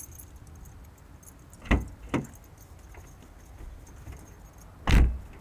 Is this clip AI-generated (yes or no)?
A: no